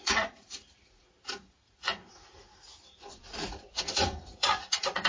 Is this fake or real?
fake